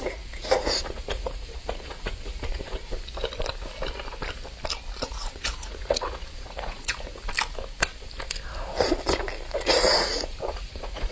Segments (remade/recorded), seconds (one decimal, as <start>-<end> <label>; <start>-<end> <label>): 0.0-2.8 remade; 2.8-5.0 recorded; 5.0-7.2 remade; 7.2-9.6 recorded; 9.6-11.1 remade